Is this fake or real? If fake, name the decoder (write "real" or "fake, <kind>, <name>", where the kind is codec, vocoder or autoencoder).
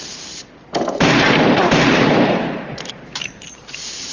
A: fake, vocoder, BigVGAN v2